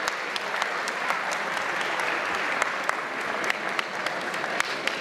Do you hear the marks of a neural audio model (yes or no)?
no